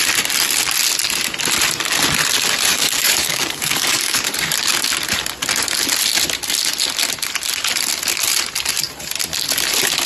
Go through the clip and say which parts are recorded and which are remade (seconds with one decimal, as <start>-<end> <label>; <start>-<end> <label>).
0.0-2.7 recorded; 2.7-4.3 remade; 4.3-10.1 recorded